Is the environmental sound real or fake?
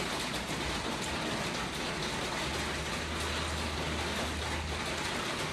real